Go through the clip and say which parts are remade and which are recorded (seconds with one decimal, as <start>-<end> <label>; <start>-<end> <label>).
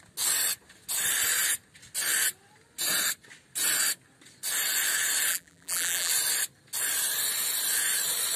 0.0-5.3 recorded; 5.3-6.1 remade; 6.1-8.4 recorded